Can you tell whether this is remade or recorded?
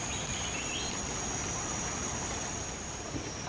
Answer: recorded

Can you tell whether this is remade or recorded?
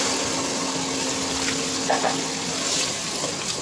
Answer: recorded